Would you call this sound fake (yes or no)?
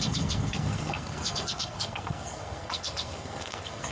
yes